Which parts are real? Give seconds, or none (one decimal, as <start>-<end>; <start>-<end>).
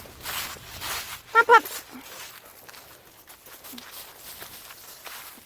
0.0-5.5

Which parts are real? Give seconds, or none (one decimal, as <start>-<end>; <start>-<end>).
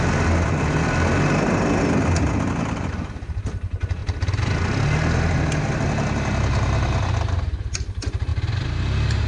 0.0-9.3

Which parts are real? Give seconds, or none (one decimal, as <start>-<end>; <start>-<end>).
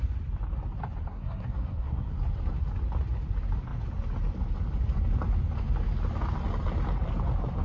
0.0-1.1; 2.1-7.6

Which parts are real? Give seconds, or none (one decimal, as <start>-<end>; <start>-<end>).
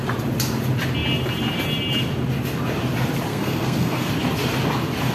0.0-3.3; 4.1-5.1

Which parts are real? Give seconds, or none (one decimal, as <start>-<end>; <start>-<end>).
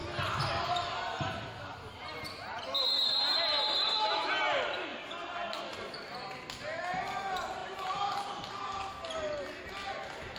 0.0-10.4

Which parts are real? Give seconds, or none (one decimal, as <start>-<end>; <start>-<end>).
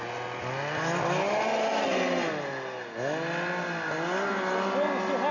0.0-5.3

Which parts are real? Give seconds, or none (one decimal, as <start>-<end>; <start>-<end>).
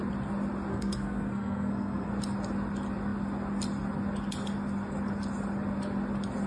0.0-0.7; 2.1-6.5